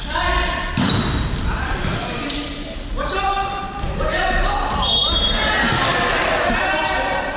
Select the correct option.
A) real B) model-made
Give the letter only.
B